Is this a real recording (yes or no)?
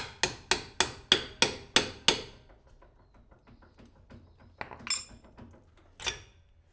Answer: yes